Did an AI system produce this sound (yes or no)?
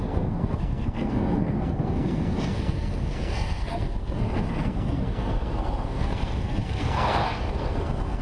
yes